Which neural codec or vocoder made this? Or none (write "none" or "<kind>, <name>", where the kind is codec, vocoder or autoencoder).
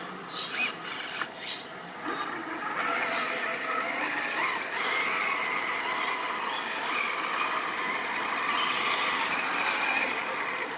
none